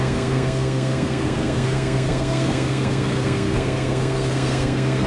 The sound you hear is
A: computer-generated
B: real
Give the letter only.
A